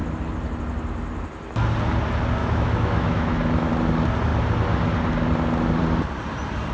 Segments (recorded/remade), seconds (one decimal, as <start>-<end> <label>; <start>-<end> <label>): 0.0-2.4 recorded; 2.4-3.7 remade; 3.7-6.7 recorded